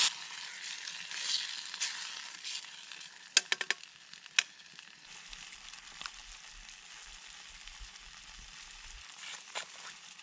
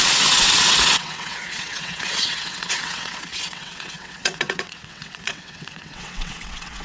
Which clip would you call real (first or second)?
first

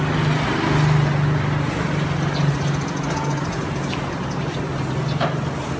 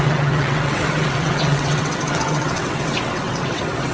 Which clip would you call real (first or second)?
first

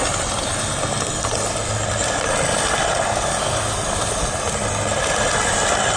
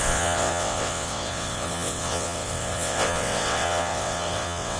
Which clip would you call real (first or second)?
first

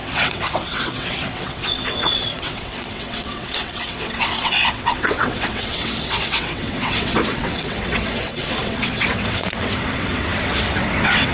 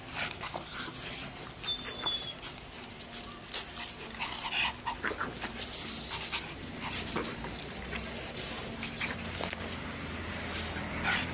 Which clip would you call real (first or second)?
second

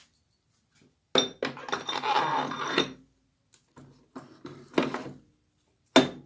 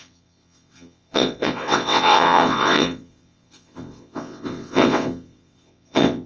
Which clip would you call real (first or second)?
first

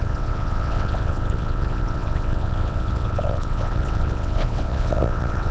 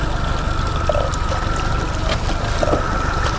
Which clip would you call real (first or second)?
second